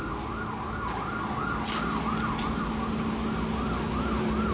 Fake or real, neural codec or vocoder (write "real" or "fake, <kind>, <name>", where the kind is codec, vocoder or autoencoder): real